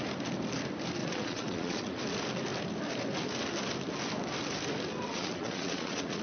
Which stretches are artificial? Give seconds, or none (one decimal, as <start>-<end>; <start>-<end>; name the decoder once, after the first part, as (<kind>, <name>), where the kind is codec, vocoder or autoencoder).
1.0-2.0 (vocoder, Vocos); 5.1-6.2